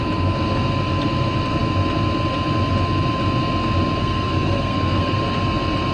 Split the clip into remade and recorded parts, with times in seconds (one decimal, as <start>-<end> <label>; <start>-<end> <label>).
0.0-4.0 recorded; 4.0-5.2 remade; 5.2-5.9 recorded